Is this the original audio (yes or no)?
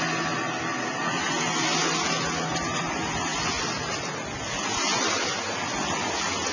yes